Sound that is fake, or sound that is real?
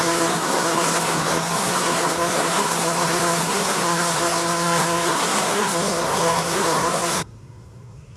fake